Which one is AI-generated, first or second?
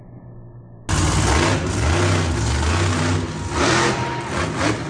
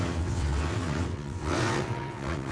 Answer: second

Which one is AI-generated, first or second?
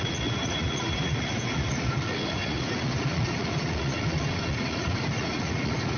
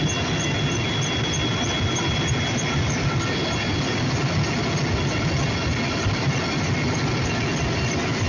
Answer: first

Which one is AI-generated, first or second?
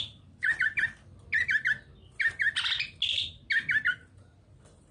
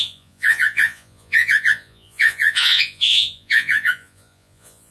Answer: second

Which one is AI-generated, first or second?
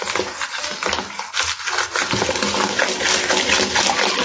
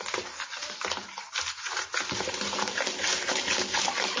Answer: second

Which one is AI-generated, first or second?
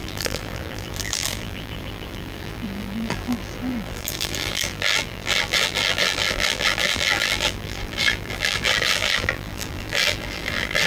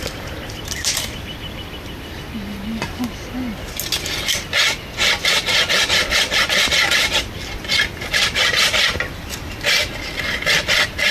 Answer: first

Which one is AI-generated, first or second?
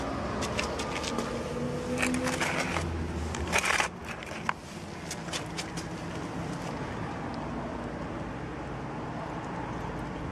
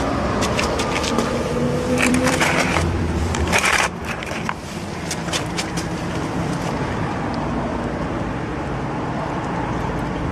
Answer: second